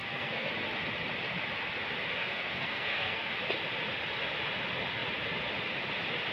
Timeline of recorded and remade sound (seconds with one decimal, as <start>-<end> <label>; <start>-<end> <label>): 0.0-0.5 remade; 0.5-2.2 recorded; 2.2-3.3 remade; 3.3-6.3 recorded